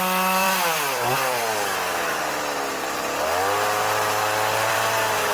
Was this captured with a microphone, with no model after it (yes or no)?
no